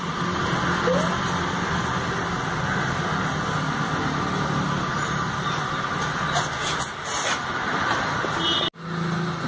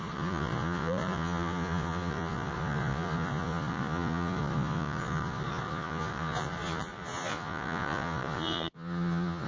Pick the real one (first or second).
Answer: first